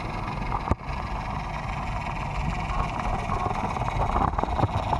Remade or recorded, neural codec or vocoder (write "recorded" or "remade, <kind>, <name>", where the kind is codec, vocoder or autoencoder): recorded